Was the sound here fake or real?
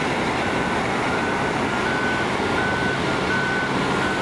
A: real